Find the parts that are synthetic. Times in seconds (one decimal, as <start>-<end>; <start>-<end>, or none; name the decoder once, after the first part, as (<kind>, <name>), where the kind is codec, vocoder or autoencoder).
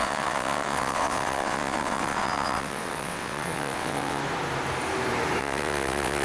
0.0-4.2 (vocoder, WaveNeXt); 5.4-6.2